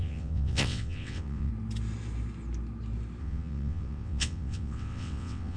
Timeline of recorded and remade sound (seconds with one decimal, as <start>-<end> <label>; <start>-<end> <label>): 0.0-1.5 remade; 1.5-3.2 recorded; 3.2-5.6 remade

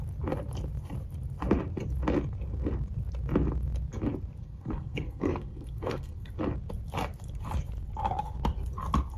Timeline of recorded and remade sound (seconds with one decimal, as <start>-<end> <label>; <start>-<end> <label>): 0.0-4.4 recorded; 4.4-6.3 remade; 6.3-9.2 recorded

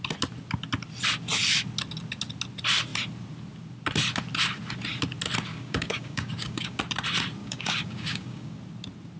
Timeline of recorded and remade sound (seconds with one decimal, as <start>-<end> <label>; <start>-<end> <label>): 0.0-5.5 recorded; 5.5-6.8 remade; 6.8-7.4 recorded; 7.4-8.6 remade; 8.6-9.2 recorded

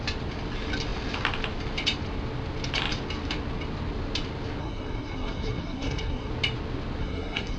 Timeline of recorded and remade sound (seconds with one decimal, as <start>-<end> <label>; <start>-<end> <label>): 0.0-4.6 recorded; 4.6-6.3 remade; 6.3-7.0 recorded; 7.0-7.6 remade

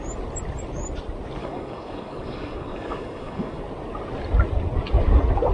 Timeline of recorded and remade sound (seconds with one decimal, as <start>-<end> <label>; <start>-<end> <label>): 0.0-1.4 recorded; 1.4-3.6 remade; 3.6-5.5 recorded